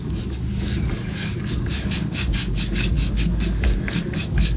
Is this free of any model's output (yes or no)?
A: no